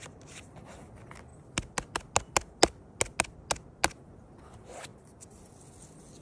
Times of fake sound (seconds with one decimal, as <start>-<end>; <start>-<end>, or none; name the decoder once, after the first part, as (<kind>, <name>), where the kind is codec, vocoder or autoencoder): none